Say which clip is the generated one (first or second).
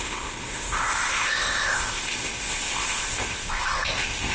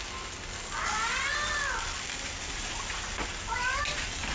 first